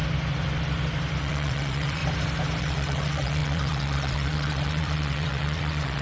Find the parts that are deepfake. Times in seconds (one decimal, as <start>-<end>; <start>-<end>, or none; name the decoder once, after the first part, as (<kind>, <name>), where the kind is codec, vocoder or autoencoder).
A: 1.2-2.0 (vocoder, WaveNeXt); 2.6-6.0